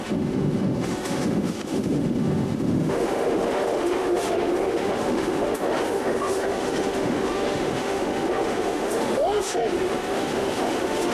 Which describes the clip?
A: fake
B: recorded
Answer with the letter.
A